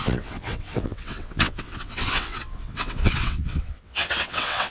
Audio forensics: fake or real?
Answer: fake